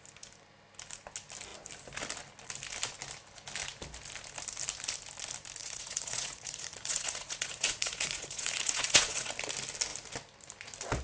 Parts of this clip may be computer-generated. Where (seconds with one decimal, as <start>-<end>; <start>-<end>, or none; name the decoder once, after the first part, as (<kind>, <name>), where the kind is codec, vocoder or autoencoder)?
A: 5.6-9.3 (vocoder, Vocos)